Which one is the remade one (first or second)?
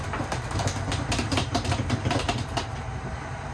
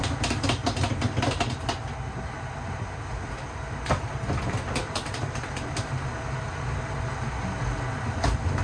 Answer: first